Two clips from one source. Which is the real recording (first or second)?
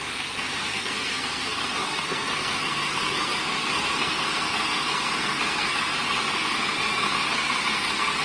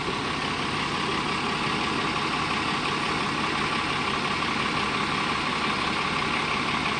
second